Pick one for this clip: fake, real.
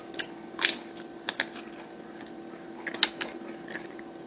real